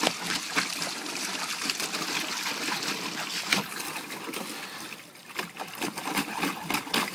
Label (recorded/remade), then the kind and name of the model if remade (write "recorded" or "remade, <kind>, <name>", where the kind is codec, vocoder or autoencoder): recorded